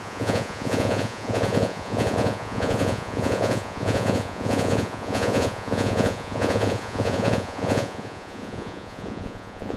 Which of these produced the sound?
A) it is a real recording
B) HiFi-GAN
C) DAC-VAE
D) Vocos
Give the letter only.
D